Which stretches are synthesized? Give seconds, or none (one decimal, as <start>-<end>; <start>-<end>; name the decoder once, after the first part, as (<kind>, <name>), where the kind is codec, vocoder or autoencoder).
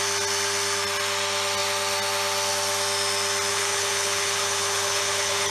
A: 3.5-5.5 (codec, HILCodec)